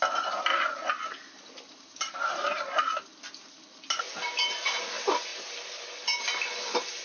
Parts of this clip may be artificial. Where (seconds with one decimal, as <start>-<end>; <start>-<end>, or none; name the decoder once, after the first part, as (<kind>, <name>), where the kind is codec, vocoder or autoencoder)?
none